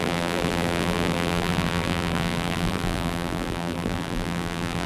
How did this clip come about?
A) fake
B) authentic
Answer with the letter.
A